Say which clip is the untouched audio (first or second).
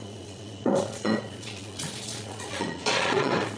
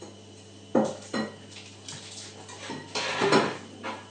second